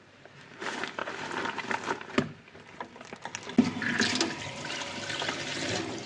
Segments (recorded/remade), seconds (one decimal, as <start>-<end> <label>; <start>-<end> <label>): 0.0-6.1 recorded

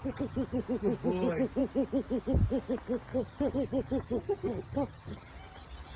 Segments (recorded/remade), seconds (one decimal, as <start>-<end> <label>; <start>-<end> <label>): 0.0-0.6 remade; 0.6-3.1 recorded; 3.1-5.3 remade; 5.3-6.0 recorded

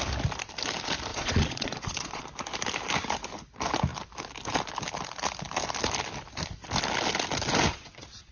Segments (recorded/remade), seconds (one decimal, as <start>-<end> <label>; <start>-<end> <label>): 0.0-1.1 recorded; 1.1-2.2 remade; 2.2-7.7 recorded; 7.7-8.3 remade